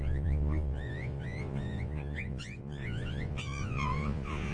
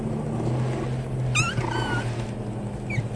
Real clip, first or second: second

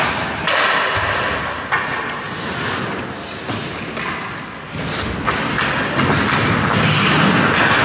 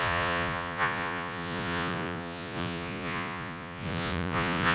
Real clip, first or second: first